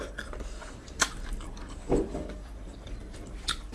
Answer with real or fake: fake